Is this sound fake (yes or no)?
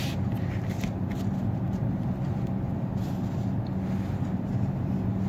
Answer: no